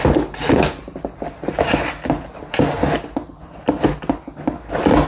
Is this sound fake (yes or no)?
no